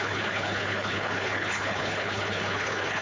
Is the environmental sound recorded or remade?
remade